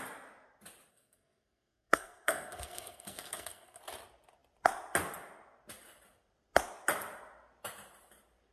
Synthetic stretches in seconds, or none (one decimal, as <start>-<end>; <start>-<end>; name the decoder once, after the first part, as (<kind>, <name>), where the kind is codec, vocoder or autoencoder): 0.9-3.8 (codec, SNAC)

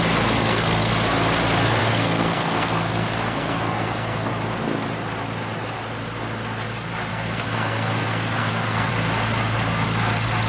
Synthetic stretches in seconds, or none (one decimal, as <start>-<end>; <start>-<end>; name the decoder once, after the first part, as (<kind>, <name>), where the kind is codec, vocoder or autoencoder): 0.4-0.9 (codec, SNAC); 1.8-4.3; 7.1-8.9

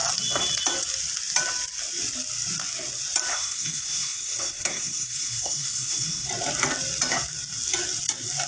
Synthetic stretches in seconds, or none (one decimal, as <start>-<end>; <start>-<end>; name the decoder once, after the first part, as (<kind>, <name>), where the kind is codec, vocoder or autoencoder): 3.3-6.3 (codec, SNAC)

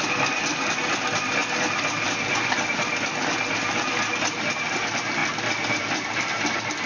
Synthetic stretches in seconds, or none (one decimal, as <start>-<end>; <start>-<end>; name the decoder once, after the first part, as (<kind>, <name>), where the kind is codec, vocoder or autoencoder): none

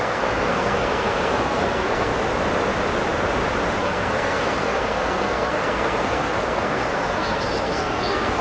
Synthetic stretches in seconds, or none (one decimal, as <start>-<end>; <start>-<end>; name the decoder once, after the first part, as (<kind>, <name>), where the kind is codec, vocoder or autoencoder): 0.0-2.1 (codec, SNAC); 3.8-8.4